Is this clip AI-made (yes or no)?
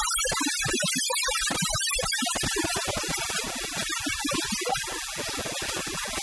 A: no